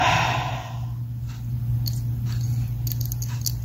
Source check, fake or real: real